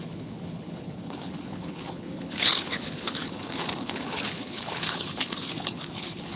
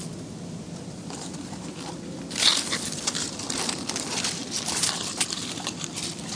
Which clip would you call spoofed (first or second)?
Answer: first